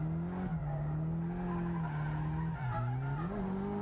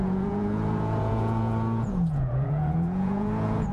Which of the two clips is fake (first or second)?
second